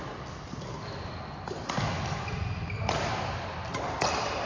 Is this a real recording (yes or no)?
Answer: yes